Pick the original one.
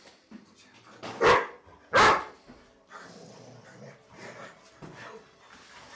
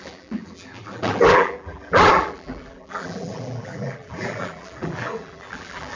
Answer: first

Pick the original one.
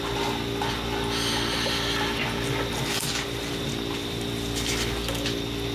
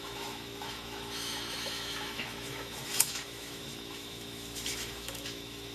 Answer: first